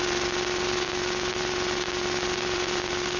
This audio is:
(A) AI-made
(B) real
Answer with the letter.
B